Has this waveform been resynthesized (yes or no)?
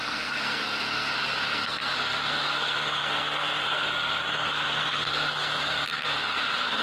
yes